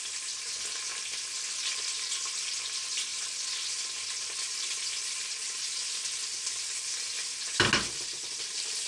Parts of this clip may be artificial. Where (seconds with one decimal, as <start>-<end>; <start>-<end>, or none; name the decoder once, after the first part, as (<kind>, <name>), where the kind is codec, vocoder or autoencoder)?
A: none